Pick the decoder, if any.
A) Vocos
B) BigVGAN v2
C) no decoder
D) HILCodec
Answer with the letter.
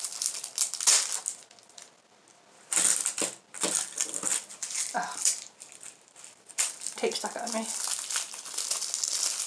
C